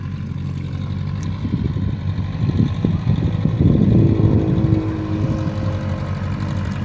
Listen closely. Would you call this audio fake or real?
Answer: real